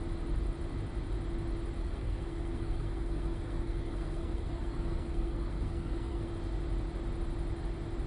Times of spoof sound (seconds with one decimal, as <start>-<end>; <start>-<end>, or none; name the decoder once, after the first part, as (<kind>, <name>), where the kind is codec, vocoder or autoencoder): 1.8-6.3 (codec, SNAC)